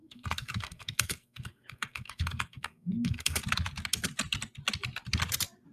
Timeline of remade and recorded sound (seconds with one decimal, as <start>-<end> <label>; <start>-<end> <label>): 0.0-3.4 remade; 3.4-5.7 recorded